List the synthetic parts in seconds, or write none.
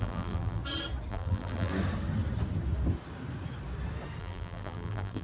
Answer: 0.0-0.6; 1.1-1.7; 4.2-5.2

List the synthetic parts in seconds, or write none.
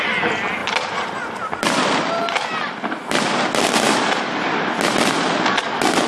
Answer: none